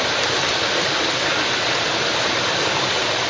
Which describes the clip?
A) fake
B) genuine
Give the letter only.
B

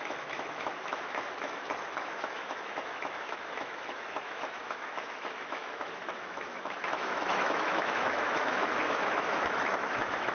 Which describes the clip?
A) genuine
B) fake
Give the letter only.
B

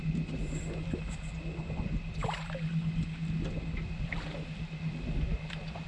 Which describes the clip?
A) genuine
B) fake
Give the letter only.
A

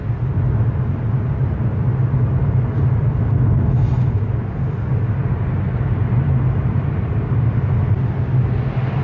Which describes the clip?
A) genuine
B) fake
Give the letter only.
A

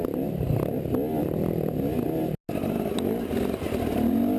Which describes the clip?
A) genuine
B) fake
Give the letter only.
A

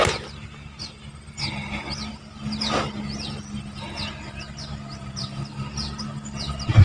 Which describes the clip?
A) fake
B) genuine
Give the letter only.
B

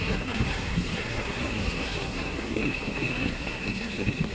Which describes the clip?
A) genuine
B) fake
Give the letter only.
B